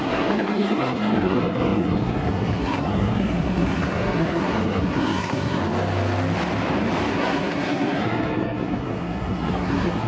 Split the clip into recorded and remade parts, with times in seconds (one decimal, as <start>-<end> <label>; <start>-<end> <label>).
0.0-5.6 remade; 5.6-7.1 recorded; 7.1-10.1 remade